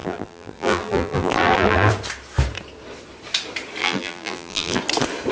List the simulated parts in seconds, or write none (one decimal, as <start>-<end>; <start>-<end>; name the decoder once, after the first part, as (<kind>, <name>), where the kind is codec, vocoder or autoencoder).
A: 0.0-1.9 (vocoder, BigVGAN v2); 3.8-4.8